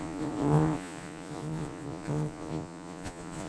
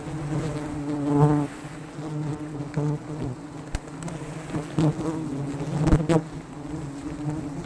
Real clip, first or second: second